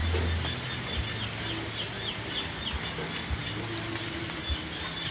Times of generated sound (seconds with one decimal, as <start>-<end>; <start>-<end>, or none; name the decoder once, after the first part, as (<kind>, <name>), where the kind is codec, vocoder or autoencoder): none